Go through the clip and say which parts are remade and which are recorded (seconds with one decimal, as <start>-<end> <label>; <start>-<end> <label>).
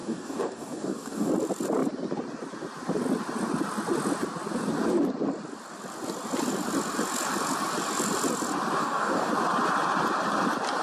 0.0-1.3 remade; 1.3-8.8 recorded; 8.8-9.3 remade; 9.3-10.8 recorded